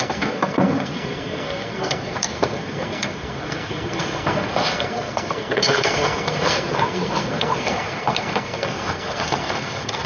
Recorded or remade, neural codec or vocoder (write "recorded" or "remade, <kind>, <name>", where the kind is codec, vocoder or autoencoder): remade, codec, SNAC